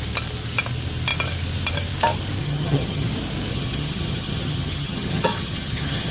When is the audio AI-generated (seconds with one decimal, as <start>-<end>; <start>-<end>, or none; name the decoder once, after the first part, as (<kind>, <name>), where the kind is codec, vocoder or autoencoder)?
2.4-3.1 (vocoder, HiFi-GAN); 3.5-6.1